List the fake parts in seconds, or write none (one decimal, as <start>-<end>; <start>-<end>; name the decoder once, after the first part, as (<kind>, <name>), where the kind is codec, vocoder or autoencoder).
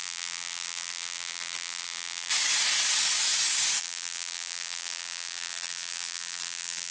0.0-2.3 (vocoder, BigVGAN v2); 3.8-6.9